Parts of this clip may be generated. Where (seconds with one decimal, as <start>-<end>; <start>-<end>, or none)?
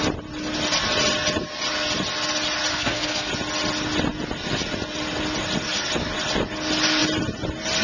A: 2.7-3.3